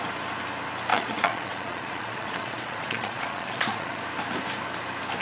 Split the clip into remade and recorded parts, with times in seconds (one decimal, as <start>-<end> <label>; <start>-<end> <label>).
0.0-0.9 recorded; 0.9-4.0 remade; 4.0-5.2 recorded